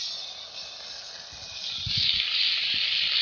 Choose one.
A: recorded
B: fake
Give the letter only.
A